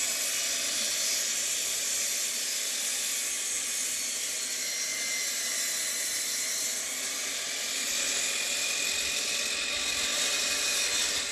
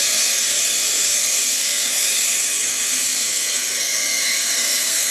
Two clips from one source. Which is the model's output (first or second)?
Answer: second